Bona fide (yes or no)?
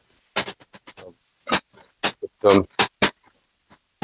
yes